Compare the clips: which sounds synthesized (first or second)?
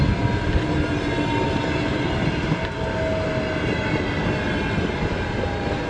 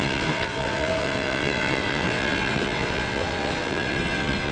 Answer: second